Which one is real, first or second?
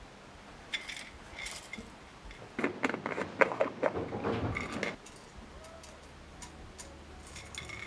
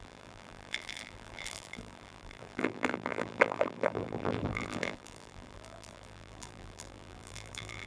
first